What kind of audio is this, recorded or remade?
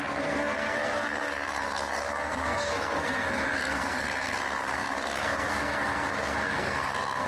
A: remade